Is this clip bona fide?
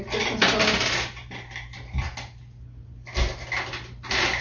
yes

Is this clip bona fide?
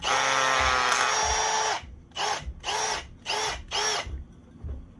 yes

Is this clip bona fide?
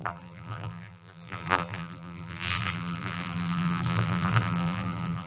no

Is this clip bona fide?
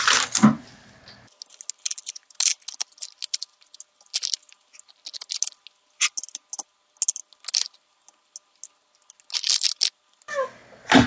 yes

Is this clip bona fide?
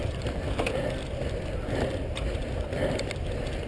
yes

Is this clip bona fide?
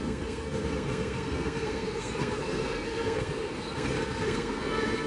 no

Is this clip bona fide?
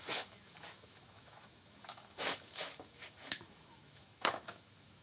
no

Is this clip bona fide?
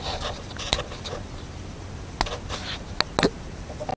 yes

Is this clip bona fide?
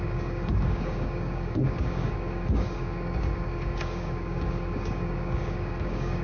no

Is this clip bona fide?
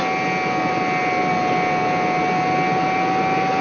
yes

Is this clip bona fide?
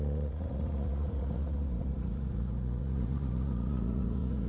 no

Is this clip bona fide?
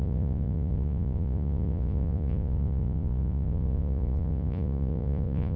no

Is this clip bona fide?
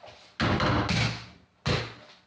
yes